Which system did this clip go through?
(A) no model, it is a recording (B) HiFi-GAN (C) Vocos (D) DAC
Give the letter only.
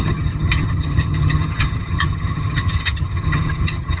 B